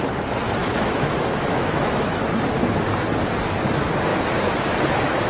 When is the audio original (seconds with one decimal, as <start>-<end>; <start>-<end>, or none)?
0.0-0.6; 2.1-5.3